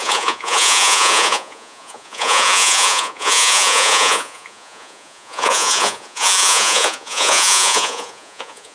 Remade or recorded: remade